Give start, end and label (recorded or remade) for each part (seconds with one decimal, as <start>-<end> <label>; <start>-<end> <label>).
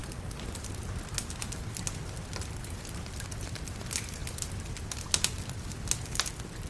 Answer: 0.0-6.7 recorded